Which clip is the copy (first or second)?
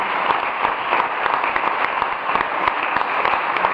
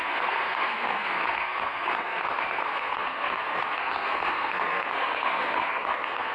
second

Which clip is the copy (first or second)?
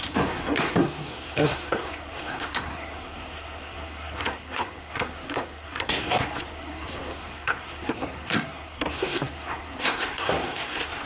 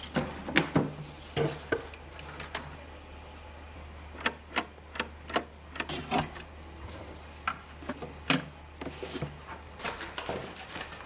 first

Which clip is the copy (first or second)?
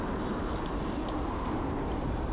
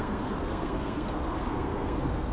second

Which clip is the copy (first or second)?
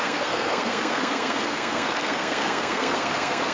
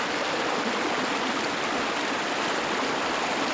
first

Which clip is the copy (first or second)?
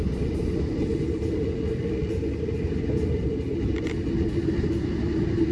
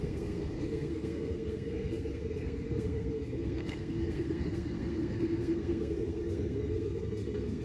second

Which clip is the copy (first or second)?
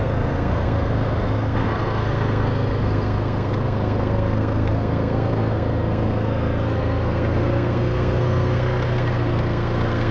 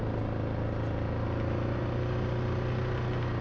first